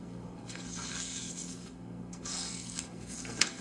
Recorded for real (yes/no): no